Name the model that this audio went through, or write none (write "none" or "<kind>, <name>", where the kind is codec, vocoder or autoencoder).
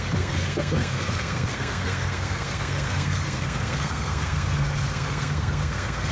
codec, SNAC